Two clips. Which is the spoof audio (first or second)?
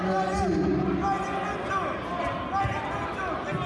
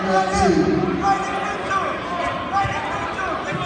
second